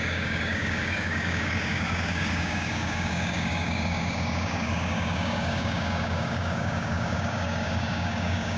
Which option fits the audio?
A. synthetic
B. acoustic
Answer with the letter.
A